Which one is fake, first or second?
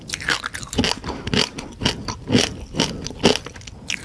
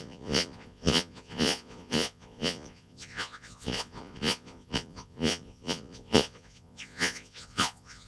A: second